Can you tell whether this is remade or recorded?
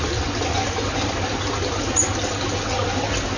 recorded